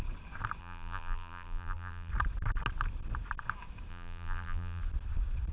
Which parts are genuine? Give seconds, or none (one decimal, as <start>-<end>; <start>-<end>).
0.0-0.6; 2.1-3.9; 4.8-5.5